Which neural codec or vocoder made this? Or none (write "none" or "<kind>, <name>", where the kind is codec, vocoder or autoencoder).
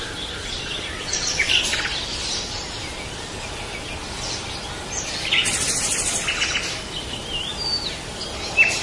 none